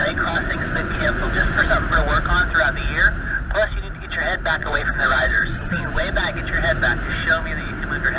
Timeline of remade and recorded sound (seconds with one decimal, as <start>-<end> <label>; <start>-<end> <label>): 0.0-1.7 remade; 1.7-4.6 recorded; 4.6-6.2 remade; 6.2-8.2 recorded